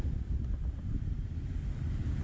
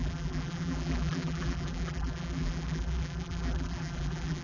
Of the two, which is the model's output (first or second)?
second